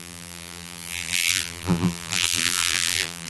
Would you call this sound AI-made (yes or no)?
yes